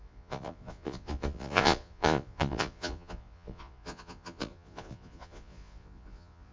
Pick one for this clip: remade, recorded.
remade